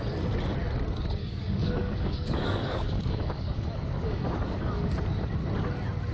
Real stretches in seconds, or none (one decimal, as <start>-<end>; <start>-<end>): 0.0-1.2; 4.9-6.1